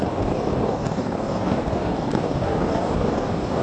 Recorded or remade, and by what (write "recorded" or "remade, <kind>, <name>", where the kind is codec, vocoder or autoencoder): remade, codec, DAC